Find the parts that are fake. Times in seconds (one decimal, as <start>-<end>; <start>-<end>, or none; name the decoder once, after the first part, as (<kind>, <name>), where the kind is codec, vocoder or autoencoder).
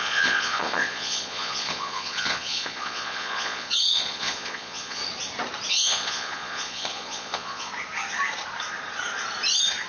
0.0-5.0 (vocoder, Vocos); 5.7-7.7